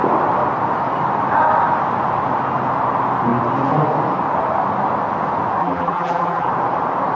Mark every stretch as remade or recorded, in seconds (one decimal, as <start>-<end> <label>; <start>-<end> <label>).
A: 0.0-5.6 recorded; 5.6-6.5 remade; 6.5-7.1 recorded